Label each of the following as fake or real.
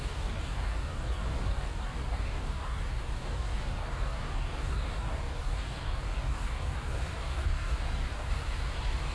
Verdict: fake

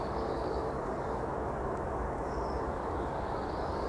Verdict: fake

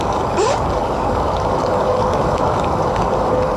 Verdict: fake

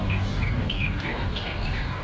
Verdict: fake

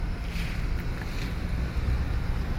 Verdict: real